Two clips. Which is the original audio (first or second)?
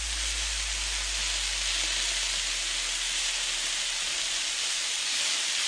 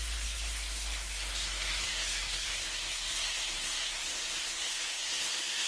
first